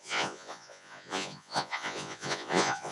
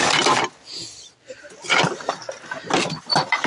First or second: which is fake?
first